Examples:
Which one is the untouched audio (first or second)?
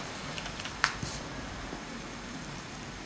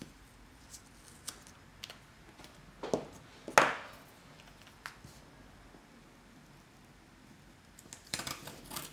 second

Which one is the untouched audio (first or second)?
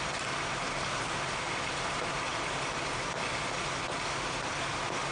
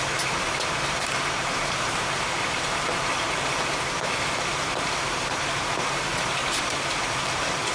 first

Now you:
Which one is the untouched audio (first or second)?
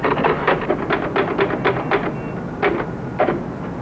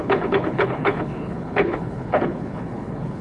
first